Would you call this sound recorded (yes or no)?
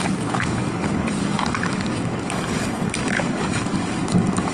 no